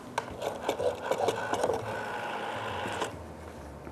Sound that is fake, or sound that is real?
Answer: real